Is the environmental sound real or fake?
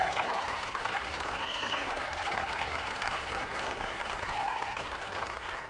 fake